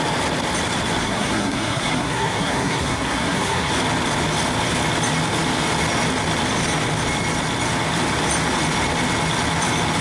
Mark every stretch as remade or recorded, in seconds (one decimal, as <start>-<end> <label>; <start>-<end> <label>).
0.0-1.0 recorded; 1.0-3.7 remade; 3.7-10.0 recorded